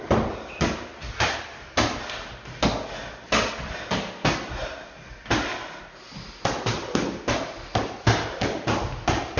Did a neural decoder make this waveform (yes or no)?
no